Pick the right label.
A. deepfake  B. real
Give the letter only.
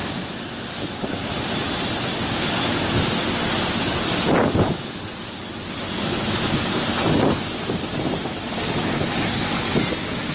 B